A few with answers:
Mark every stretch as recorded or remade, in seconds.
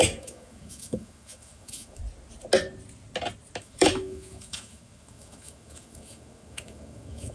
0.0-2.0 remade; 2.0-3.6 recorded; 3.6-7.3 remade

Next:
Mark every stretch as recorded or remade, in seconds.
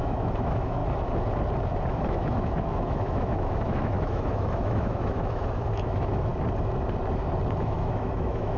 0.0-0.8 remade; 0.8-1.9 recorded; 1.9-6.3 remade; 6.3-7.6 recorded; 7.6-8.6 remade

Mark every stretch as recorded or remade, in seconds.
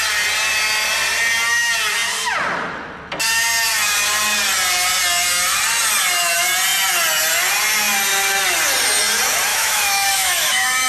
0.0-9.5 recorded; 9.5-10.9 remade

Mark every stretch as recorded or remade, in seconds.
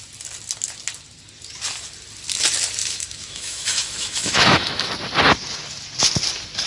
0.0-2.8 recorded; 2.8-4.9 remade; 4.9-6.7 recorded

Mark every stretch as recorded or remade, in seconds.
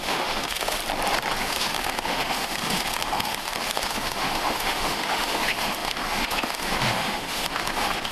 0.0-0.8 remade; 0.8-1.4 recorded; 1.4-8.1 remade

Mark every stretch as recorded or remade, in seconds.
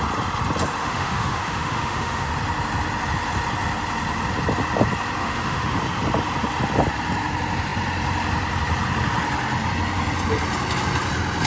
0.0-0.8 recorded; 0.8-2.3 remade; 2.3-5.2 recorded; 5.2-5.8 remade; 5.8-11.5 recorded